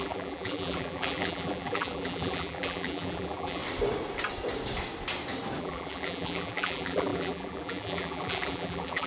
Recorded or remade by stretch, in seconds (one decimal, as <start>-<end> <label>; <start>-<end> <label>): 0.0-3.6 remade; 3.6-5.6 recorded; 5.6-9.1 remade